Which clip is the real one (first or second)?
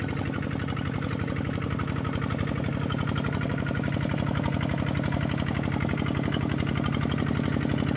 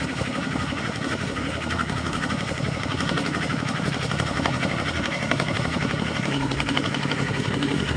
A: first